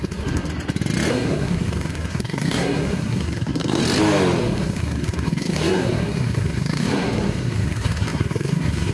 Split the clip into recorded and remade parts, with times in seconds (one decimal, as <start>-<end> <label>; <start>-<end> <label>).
0.0-0.5 remade; 0.5-1.1 recorded; 1.1-3.8 remade; 3.8-4.4 recorded; 4.4-8.9 remade